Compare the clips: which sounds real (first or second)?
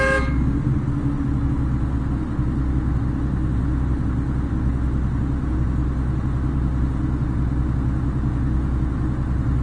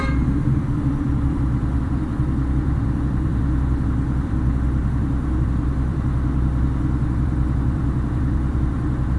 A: first